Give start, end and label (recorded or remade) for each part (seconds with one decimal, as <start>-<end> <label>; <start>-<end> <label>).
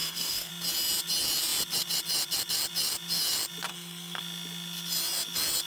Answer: 0.0-0.5 remade; 0.5-3.7 recorded; 3.7-4.2 remade; 4.2-5.7 recorded